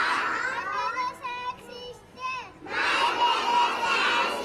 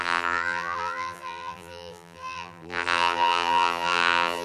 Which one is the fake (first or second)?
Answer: second